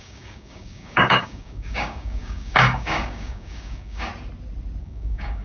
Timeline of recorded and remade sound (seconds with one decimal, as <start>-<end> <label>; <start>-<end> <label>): 0.0-4.1 remade; 4.1-4.8 recorded; 4.8-5.4 remade